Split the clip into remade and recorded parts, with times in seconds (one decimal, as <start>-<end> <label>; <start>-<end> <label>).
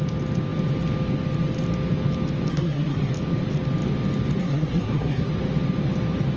0.0-2.5 recorded; 2.5-3.1 remade; 3.1-4.4 recorded; 4.4-5.3 remade; 5.3-6.4 recorded